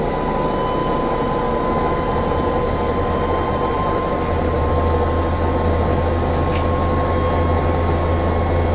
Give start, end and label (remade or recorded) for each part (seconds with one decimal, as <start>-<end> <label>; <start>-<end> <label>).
0.0-0.8 recorded; 0.8-4.7 remade; 4.7-8.7 recorded